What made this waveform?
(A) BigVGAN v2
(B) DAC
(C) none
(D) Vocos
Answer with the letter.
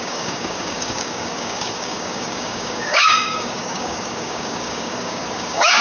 B